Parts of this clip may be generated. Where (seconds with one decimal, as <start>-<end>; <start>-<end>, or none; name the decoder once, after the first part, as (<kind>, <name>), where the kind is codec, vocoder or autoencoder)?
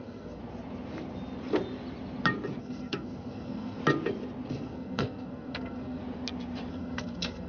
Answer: 0.0-0.4 (codec, SNAC); 2.6-3.8; 4.5-6.0; 6.7-7.5